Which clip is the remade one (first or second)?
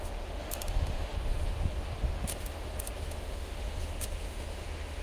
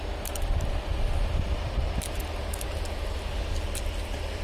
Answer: first